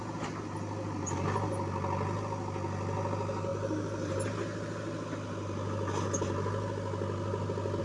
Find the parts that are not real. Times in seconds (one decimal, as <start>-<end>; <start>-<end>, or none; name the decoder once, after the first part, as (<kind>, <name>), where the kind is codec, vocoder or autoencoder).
none